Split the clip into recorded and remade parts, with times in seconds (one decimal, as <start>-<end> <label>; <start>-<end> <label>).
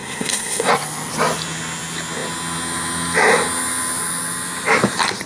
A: 0.0-0.7 remade; 0.7-5.3 recorded